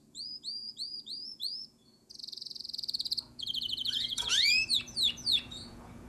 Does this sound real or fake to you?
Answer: fake